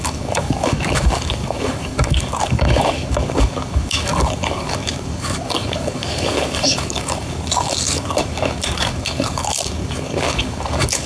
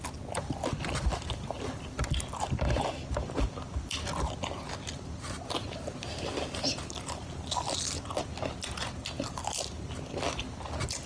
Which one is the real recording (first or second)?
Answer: second